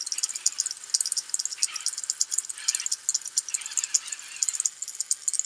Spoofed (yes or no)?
no